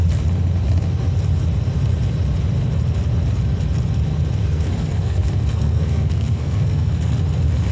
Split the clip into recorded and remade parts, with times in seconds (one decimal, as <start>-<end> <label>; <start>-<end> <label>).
0.0-4.4 recorded; 4.4-7.2 remade; 7.2-7.7 recorded